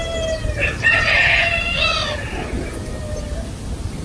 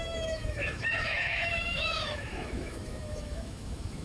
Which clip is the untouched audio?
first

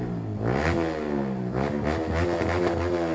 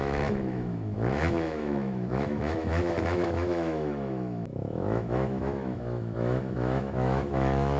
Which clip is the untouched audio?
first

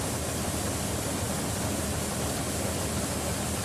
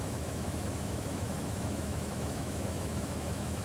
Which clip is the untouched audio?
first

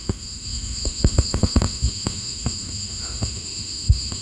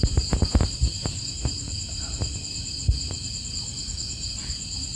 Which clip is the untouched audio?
second